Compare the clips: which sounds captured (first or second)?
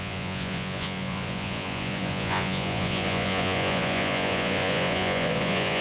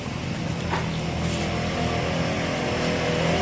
second